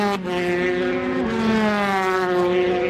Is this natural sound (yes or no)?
yes